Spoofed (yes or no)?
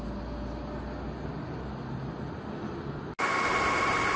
no